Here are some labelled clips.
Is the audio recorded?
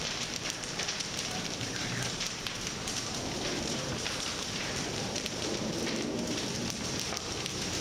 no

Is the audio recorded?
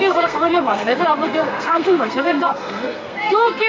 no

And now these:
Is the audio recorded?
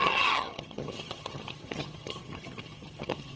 no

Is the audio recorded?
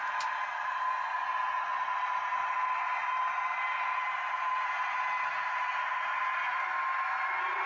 yes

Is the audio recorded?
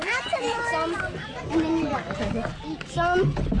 yes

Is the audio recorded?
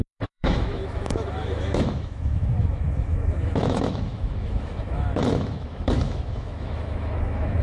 no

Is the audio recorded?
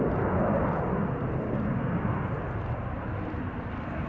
yes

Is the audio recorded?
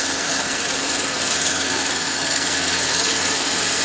no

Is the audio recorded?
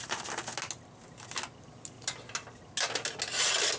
yes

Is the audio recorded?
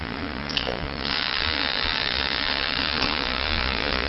no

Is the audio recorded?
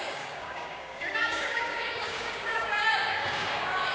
no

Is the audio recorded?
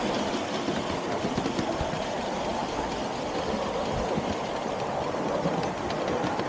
yes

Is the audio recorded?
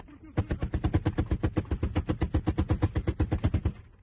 yes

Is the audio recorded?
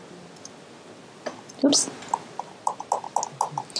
yes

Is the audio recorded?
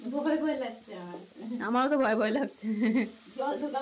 yes